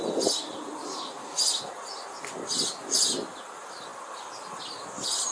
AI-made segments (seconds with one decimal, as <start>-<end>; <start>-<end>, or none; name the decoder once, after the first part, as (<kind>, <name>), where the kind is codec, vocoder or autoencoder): none